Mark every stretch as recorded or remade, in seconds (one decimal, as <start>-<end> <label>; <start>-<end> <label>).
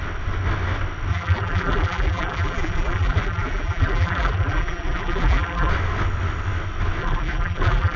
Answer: 0.0-1.1 recorded; 1.1-5.7 remade; 5.7-7.0 recorded; 7.0-8.0 remade